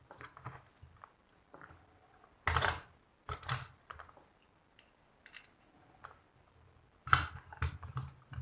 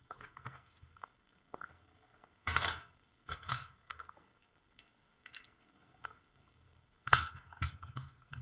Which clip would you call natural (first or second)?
first